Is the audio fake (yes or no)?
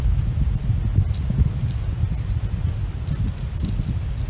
no